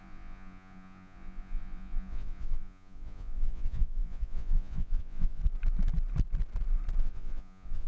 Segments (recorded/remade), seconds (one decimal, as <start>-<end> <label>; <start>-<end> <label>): 0.0-5.4 remade; 5.4-7.0 recorded; 7.0-7.9 remade